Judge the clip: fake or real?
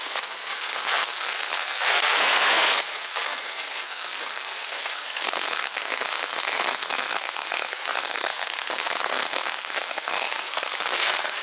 fake